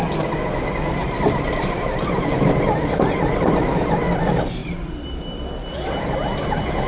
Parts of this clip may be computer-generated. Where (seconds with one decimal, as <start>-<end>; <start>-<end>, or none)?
1.0-4.0; 4.6-5.4